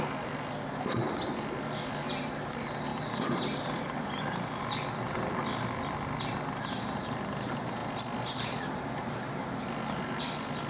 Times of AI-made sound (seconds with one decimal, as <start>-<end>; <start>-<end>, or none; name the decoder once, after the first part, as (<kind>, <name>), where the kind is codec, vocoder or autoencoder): 2.9-4.6 (vocoder, BigVGAN v2)